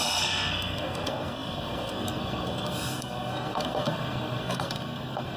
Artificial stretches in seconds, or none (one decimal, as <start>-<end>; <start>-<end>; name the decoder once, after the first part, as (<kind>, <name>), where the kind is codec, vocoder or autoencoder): 0.0-5.4 (codec, SNAC)